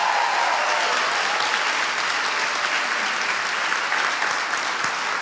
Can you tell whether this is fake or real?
real